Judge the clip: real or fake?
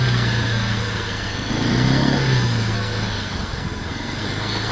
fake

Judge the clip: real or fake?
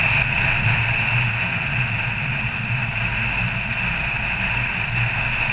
real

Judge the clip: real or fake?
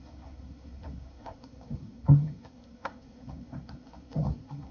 fake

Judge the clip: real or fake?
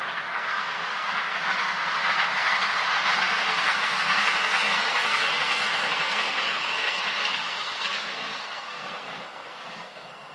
fake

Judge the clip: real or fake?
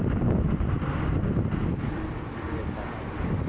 real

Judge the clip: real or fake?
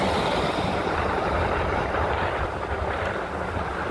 fake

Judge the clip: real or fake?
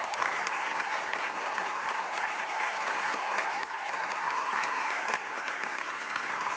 fake